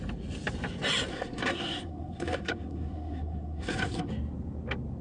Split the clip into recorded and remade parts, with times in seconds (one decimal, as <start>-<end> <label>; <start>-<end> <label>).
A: 0.0-1.1 recorded; 1.1-4.1 remade; 4.1-5.0 recorded